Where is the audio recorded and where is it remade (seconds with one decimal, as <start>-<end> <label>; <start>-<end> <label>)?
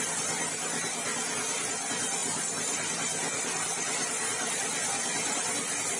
0.0-6.0 recorded